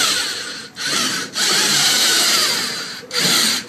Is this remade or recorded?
remade